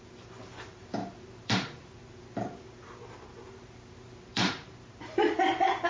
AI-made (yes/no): yes